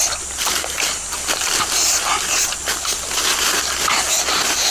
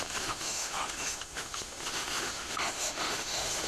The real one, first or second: first